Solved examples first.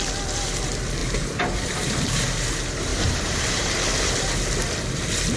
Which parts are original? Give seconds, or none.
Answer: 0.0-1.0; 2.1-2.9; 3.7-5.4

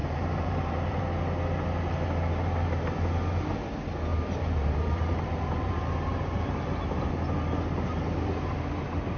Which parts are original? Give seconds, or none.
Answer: 1.0-4.1; 7.1-9.2

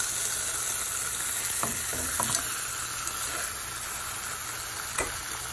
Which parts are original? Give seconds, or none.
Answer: 0.0-5.5

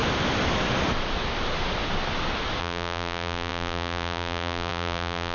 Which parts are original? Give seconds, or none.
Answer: 0.0-2.6